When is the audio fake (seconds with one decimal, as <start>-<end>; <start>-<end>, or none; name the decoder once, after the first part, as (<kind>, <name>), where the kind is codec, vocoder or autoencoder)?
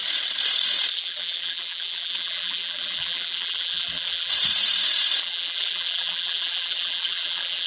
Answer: 0.9-4.3 (vocoder, BigVGAN v2); 5.2-7.7